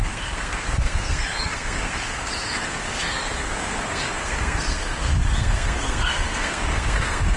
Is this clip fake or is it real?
fake